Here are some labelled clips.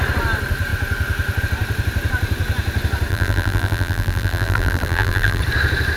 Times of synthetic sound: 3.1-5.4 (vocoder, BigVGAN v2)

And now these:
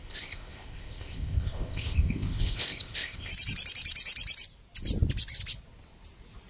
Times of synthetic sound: 0.0-3.3 (codec, ZipCodec)

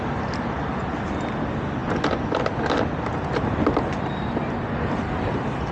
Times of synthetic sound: none

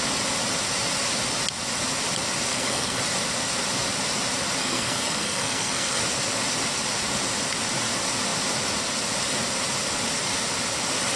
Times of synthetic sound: 2.5-3.0 (codec, SNAC); 4.6-6.0

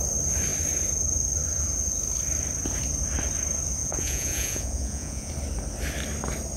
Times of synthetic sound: 3.8-5.3 (vocoder, Vocos)